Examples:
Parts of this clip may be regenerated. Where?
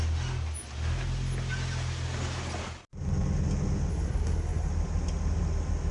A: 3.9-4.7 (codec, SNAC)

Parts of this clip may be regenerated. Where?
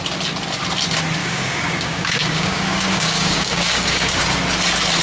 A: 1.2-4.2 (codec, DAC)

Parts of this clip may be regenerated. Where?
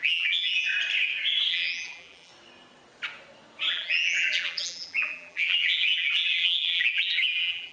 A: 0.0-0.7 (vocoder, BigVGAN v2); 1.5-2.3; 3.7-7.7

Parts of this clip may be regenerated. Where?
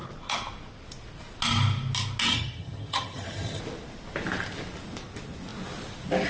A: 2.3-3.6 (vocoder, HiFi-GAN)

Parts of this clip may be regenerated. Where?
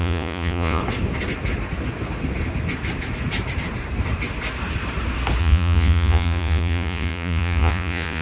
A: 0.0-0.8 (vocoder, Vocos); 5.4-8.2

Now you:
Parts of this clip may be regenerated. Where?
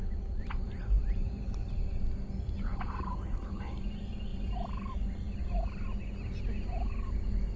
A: 0.0-3.4 (vocoder, BigVGAN v2)